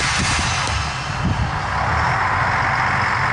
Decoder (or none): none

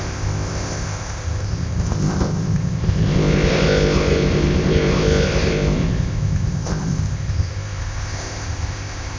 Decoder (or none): codec, ZipCodec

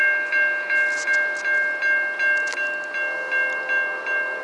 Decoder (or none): none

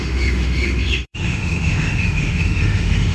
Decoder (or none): autoencoder, DAC-VAE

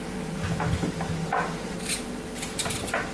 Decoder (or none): none